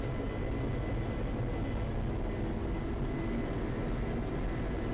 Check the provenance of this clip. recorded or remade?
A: recorded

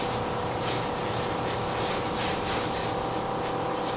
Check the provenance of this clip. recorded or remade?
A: recorded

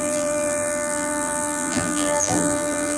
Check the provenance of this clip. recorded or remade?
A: remade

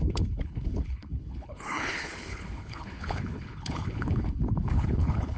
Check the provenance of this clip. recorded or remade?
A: remade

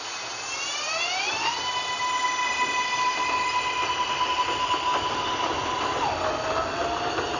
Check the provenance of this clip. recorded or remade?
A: recorded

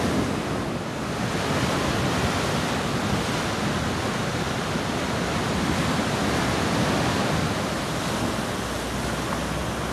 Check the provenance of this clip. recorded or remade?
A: recorded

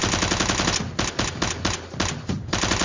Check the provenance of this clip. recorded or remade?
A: recorded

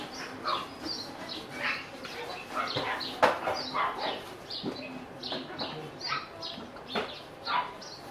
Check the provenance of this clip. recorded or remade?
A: recorded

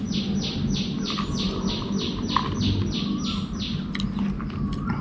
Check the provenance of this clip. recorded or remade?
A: recorded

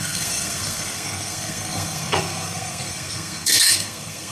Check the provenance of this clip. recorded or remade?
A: remade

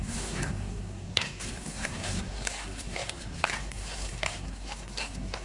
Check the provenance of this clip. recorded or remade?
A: remade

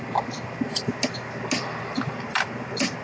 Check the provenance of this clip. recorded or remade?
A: recorded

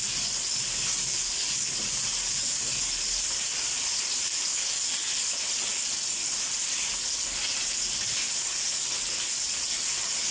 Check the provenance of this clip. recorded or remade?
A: recorded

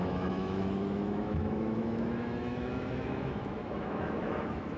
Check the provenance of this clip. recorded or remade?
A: remade